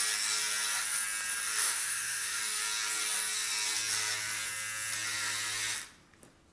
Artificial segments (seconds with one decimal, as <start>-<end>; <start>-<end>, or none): 1.6-2.4